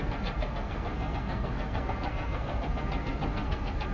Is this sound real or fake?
fake